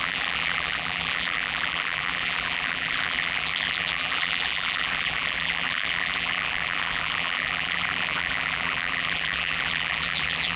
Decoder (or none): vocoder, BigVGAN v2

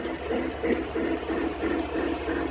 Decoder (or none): none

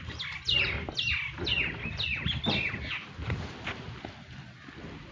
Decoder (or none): none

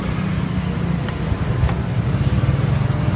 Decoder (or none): none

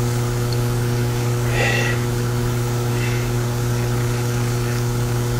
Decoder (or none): codec, DAC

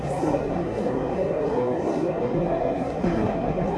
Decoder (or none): codec, SNAC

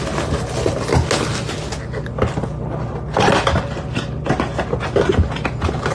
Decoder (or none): none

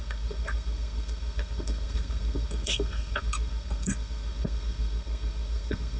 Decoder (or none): codec, SNAC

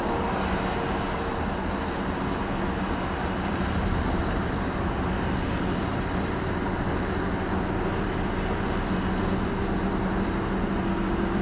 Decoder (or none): none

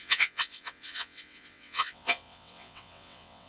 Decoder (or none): vocoder, WaveNeXt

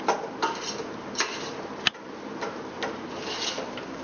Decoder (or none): vocoder, BigVGAN v2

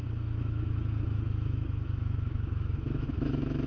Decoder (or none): autoencoder, DAC-VAE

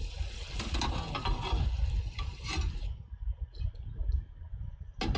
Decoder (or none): none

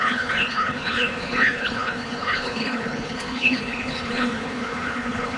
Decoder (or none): codec, HILCodec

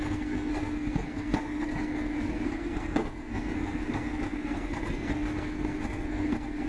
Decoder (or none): codec, SNAC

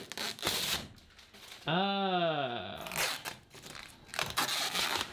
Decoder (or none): none